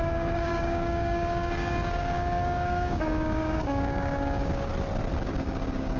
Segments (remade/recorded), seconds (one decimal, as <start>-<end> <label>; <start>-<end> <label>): 0.0-4.7 remade; 4.7-5.2 recorded; 5.2-6.0 remade